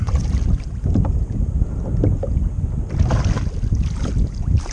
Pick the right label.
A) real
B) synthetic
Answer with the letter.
A